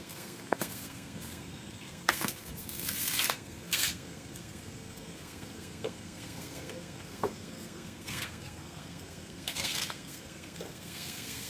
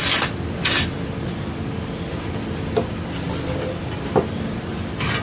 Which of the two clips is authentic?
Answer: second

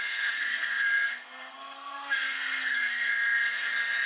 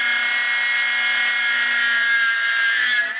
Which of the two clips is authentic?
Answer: second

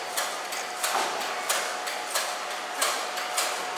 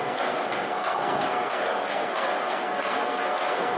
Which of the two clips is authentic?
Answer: first